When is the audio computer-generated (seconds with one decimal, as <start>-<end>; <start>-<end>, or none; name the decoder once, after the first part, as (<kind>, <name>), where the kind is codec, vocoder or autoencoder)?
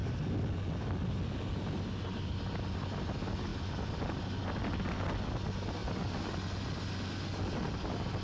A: none